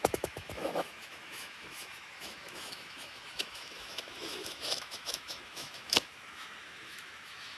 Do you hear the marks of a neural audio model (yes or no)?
yes